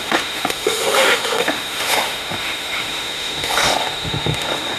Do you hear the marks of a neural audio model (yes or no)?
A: yes